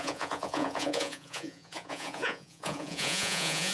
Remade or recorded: remade